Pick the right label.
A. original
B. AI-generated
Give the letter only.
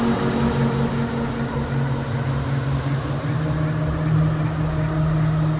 A